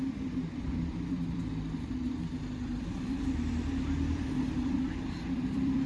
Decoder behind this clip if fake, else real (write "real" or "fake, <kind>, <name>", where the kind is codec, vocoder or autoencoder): fake, vocoder, BigVGAN v2